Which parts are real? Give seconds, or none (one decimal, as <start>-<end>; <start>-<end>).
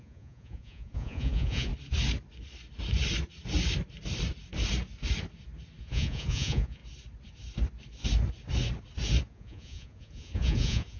1.7-5.8; 6.8-9.2